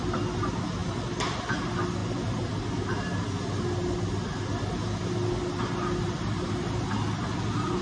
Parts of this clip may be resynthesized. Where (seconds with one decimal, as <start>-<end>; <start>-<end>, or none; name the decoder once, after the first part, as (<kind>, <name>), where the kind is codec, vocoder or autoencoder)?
none